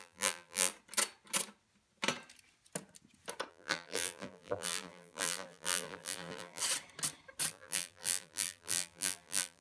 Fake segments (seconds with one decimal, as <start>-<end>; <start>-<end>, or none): 0.0-0.7; 3.5-6.6; 7.5-9.6